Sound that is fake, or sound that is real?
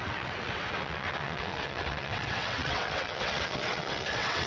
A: fake